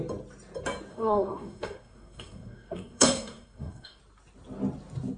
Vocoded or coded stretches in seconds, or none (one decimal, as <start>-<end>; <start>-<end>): 0.9-4.0